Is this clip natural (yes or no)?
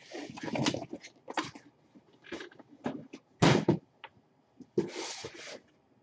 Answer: yes